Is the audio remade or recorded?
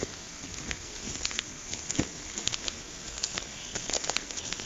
remade